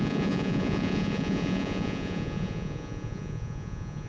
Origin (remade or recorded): remade